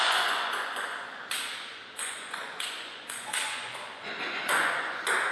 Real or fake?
fake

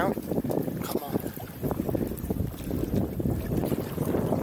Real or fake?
real